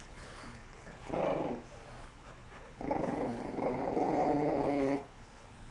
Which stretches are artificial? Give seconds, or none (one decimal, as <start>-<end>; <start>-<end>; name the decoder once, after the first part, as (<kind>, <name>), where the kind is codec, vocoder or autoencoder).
0.0-1.2 (codec, HILCodec); 2.0-5.7